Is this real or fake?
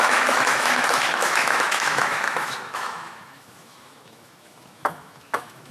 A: fake